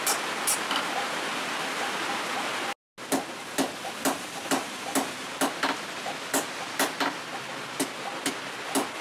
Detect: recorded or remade recorded